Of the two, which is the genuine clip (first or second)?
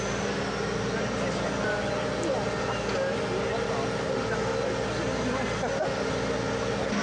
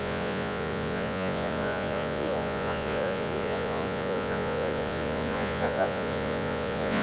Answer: first